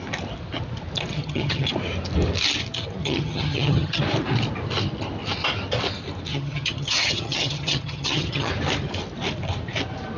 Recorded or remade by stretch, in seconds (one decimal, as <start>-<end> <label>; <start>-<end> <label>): 0.0-1.1 recorded; 1.1-1.7 remade; 1.7-3.0 recorded; 3.0-4.0 remade; 4.0-6.3 recorded; 6.3-8.5 remade; 8.5-10.2 recorded